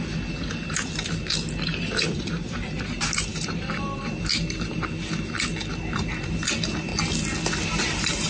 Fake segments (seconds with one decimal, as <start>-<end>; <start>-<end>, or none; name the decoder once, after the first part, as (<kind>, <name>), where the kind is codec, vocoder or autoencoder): 0.0-5.5 (vocoder, BigVGAN v2); 6.2-6.9; 7.7-8.3